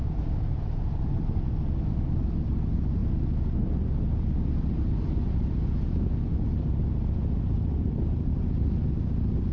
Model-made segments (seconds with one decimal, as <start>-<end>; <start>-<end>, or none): 0.0-3.0; 4.6-9.5